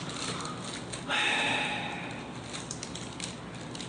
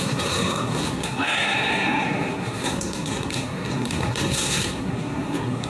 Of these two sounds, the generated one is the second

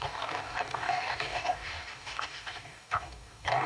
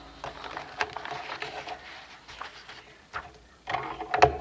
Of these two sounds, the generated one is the first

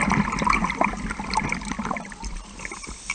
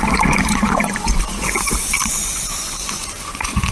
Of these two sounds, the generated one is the second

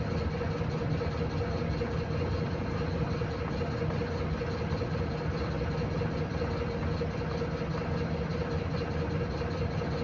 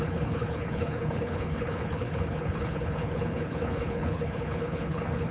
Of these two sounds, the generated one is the second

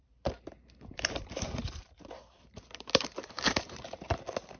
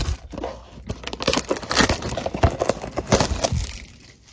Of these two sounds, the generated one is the first